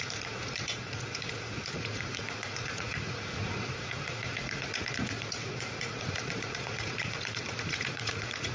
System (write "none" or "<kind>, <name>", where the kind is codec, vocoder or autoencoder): vocoder, Vocos